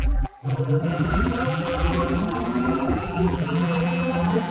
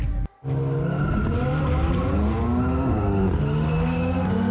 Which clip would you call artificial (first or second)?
first